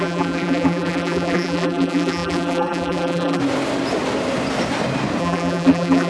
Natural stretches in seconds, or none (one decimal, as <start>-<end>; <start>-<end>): 3.4-5.2